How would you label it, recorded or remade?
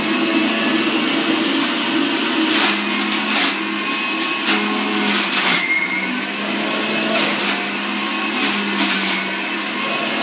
recorded